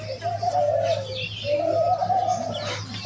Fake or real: real